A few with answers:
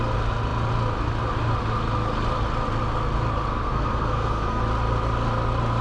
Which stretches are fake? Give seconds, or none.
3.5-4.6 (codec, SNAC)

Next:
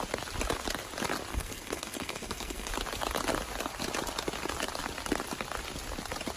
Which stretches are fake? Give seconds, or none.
1.3-2.7 (codec, SNAC)

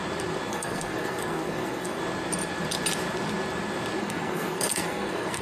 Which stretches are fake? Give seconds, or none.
0.5-2.0 (codec, SNAC); 4.0-5.4

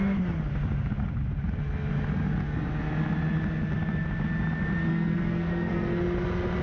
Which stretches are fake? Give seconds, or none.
4.9-6.0 (codec, SNAC)

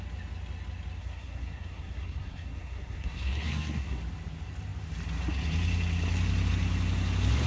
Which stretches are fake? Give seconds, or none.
1.0-4.0 (codec, SNAC)

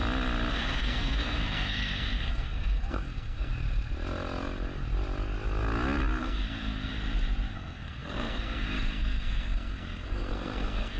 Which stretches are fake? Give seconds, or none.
0.5-3.5 (codec, SNAC); 6.2-6.9; 7.5-11.0